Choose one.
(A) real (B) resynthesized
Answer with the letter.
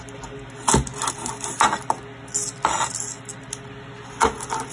A